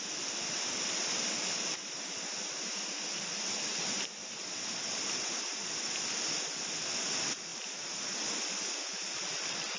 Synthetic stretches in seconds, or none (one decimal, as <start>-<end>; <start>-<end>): none